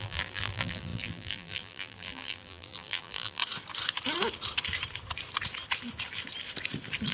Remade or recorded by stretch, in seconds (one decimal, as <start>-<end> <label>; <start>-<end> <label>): 0.0-3.4 remade; 3.4-7.1 recorded